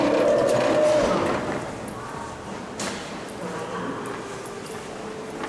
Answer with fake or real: real